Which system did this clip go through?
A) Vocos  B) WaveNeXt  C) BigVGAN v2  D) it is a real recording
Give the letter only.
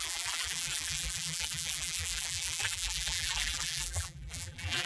C